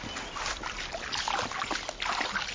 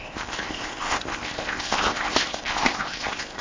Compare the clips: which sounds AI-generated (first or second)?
second